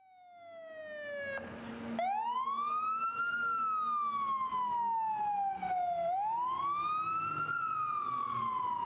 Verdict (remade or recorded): recorded